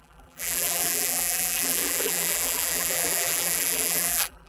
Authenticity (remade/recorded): remade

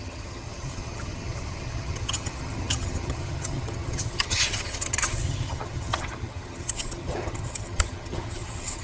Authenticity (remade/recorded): remade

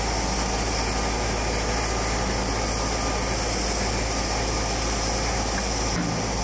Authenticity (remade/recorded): recorded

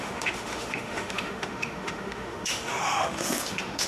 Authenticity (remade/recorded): remade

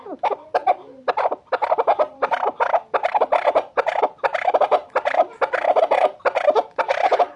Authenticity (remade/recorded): remade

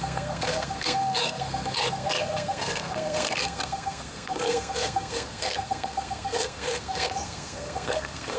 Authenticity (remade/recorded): remade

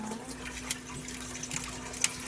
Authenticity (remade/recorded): recorded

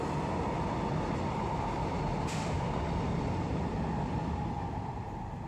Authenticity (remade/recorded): recorded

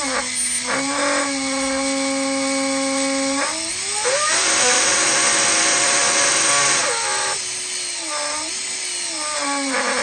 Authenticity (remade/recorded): recorded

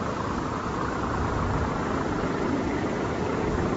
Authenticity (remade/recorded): recorded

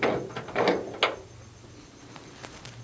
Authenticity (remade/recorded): recorded